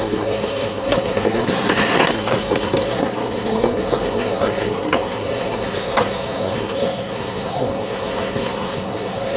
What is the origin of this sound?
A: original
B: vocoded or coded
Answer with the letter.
B